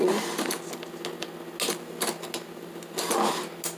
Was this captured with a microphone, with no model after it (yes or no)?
yes